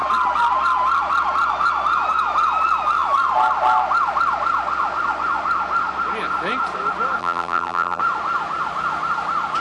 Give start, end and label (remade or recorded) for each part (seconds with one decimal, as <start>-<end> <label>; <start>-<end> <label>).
0.0-7.2 recorded; 7.2-8.0 remade; 8.0-9.6 recorded